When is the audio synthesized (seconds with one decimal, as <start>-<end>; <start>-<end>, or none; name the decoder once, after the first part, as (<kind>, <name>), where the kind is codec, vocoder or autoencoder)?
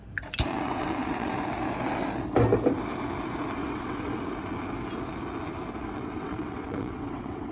0.5-1.4 (vocoder, WaveNeXt); 3.6-4.2; 5.8-7.5